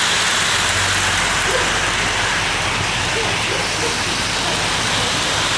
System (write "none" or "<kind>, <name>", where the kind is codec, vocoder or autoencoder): none